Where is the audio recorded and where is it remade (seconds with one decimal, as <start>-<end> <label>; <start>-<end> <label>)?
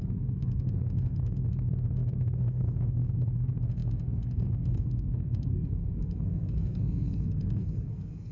0.0-8.3 remade